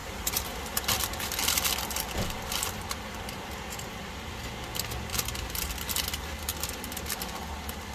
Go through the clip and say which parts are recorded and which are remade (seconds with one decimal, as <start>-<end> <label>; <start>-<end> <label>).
0.0-1.4 recorded; 1.4-2.5 remade; 2.5-5.1 recorded; 5.1-6.1 remade; 6.1-7.9 recorded